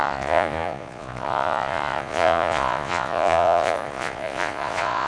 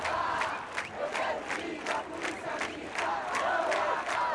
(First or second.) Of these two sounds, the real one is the second